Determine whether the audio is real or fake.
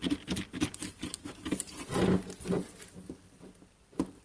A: real